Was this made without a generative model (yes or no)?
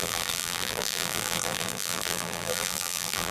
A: no